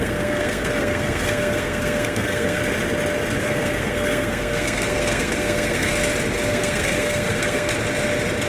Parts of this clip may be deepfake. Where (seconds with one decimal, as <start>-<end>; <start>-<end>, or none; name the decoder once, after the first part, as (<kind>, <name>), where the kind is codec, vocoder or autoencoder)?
0.0-2.6 (codec, SNAC); 3.4-5.9; 6.5-7.7